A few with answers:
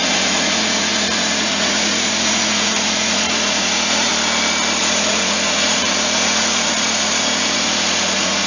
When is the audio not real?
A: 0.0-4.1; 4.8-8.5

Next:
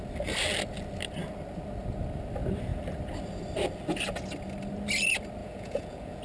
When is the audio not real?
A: 5.4-6.2

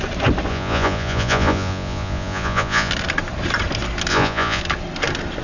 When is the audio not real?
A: 0.5-2.9; 4.1-4.6

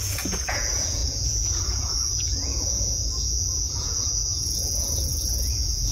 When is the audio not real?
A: 0.0-5.9